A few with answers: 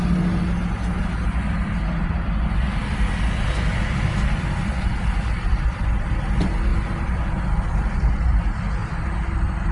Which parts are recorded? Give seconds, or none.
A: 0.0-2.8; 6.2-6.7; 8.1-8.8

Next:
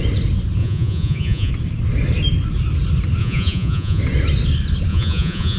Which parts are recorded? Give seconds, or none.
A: 0.0-0.6; 1.5-3.2; 4.0-4.9

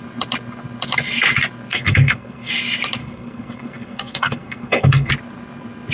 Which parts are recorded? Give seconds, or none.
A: 0.0-1.7; 2.5-3.0; 5.1-5.9

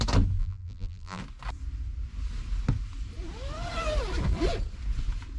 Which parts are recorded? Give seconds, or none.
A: 0.0-0.4; 1.2-5.4